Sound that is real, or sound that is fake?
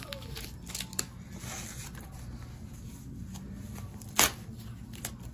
real